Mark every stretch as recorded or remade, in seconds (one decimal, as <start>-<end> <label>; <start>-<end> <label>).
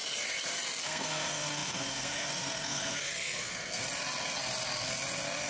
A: 0.0-0.8 recorded; 0.8-3.8 remade; 3.8-5.5 recorded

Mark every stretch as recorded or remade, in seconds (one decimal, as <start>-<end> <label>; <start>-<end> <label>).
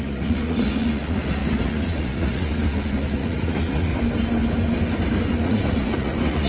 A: 0.0-3.9 remade; 3.9-5.3 recorded; 5.3-6.5 remade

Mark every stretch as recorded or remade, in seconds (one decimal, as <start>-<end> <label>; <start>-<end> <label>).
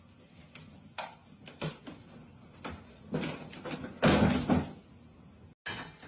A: 0.0-6.1 recorded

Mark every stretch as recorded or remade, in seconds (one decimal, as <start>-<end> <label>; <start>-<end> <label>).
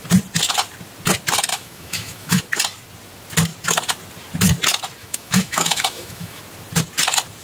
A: 0.0-1.5 recorded; 1.5-2.4 remade; 2.4-5.0 recorded; 5.0-6.4 remade; 6.4-7.4 recorded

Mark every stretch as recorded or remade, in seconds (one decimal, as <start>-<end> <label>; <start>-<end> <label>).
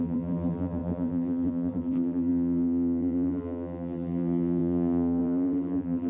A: 0.0-6.1 remade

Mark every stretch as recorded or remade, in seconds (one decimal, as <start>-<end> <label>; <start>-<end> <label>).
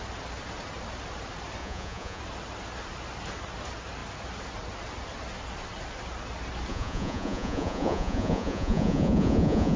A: 0.0-1.6 recorded; 1.6-2.2 remade; 2.2-6.7 recorded; 6.7-9.8 remade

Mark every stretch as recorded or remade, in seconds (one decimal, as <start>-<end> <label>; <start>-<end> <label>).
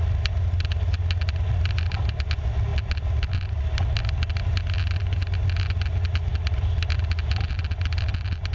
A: 0.0-8.5 recorded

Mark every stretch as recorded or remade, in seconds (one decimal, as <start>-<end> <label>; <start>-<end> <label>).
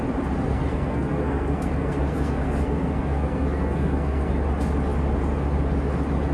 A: 0.0-0.5 recorded; 0.5-4.3 remade; 4.3-6.3 recorded